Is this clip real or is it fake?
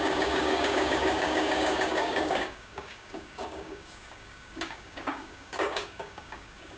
fake